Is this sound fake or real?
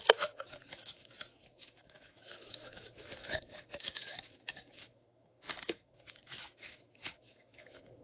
fake